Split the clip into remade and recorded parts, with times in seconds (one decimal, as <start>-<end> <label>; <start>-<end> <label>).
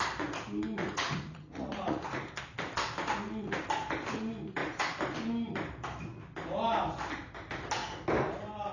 0.0-0.8 recorded; 0.8-2.3 remade; 2.3-8.7 recorded